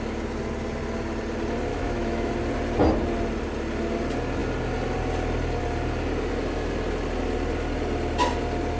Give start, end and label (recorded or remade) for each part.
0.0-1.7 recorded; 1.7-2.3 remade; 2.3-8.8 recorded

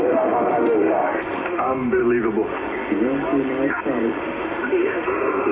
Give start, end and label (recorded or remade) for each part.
0.0-2.0 remade; 2.0-4.2 recorded; 4.2-5.5 remade

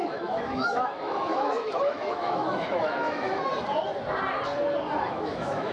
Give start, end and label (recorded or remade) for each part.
0.0-3.5 remade; 3.5-5.0 recorded; 5.0-5.7 remade